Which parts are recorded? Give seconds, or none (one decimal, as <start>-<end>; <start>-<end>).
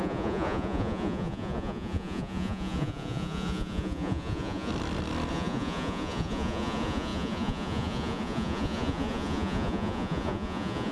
4.7-5.3